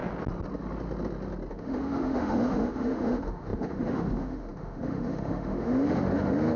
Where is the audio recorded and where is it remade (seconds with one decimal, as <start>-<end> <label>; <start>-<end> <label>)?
0.0-1.5 recorded; 1.5-6.6 remade